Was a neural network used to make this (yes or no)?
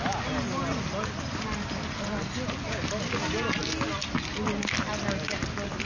no